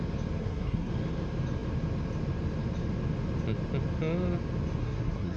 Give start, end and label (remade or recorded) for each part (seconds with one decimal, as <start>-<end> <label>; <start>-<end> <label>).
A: 0.0-0.4 recorded; 0.4-0.9 remade; 0.9-4.8 recorded; 4.8-5.4 remade